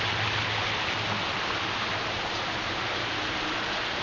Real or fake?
real